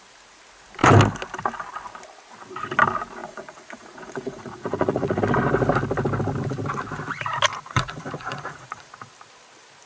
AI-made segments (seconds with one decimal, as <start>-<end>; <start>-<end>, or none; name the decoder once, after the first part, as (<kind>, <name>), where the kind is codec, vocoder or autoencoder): 3.2-5.2 (vocoder, Vocos); 7.5-8.9